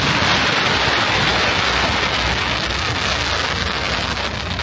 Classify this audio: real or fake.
real